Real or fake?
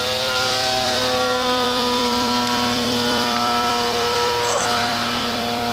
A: fake